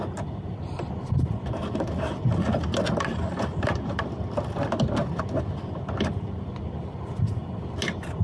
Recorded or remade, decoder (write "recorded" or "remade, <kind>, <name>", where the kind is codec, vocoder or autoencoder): recorded